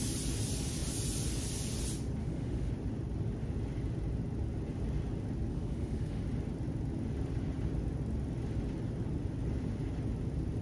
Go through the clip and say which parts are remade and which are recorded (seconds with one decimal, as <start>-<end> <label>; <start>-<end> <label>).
0.0-2.2 recorded; 2.2-2.7 remade; 2.7-5.5 recorded; 5.5-6.2 remade; 6.2-10.6 recorded